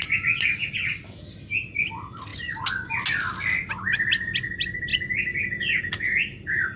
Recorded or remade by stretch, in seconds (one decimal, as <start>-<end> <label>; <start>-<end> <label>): 0.0-6.8 recorded